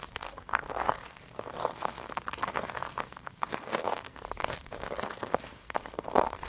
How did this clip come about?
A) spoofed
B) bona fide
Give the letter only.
A